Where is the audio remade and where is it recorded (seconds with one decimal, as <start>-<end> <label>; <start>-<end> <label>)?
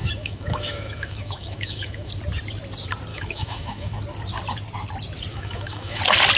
0.0-2.1 remade; 2.1-3.1 recorded; 3.1-4.0 remade; 4.0-5.3 recorded; 5.3-6.0 remade; 6.0-6.4 recorded